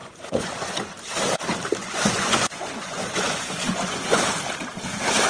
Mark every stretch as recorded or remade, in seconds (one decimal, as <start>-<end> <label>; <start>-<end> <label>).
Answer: 0.0-0.9 remade; 0.9-1.8 recorded; 1.8-4.2 remade; 4.2-5.3 recorded